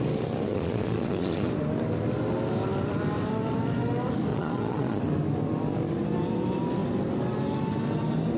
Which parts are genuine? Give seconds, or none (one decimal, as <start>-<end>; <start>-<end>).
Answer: 0.0-0.5; 1.5-4.3; 5.0-8.4